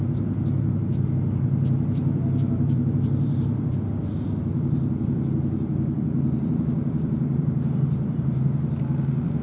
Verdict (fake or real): fake